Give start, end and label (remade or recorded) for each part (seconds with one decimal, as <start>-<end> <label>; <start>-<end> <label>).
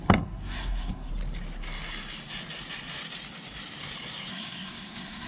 0.0-1.1 remade; 1.1-4.3 recorded; 4.3-5.3 remade